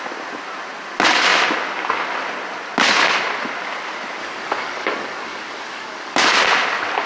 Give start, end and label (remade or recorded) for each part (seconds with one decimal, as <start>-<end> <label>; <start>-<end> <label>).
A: 0.0-4.2 recorded; 4.2-6.2 remade; 6.2-7.1 recorded